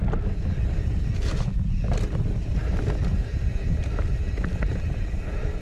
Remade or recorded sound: recorded